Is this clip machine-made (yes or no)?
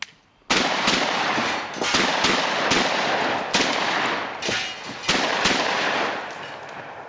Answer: no